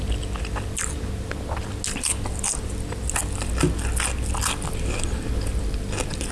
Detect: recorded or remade recorded